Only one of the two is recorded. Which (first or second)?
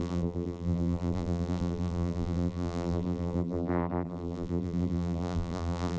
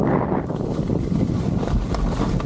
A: second